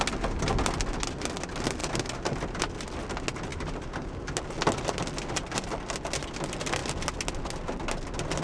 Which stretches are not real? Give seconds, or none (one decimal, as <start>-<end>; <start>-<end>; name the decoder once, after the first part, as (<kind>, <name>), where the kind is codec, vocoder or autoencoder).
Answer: none